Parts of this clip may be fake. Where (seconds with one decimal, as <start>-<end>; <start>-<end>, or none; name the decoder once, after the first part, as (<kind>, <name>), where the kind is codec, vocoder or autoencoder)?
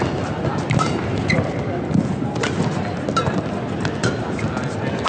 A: none